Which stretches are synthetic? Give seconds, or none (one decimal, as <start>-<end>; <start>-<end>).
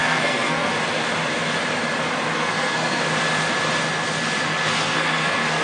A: 0.0-0.7; 2.4-3.0; 4.7-5.6